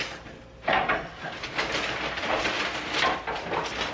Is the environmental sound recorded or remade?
recorded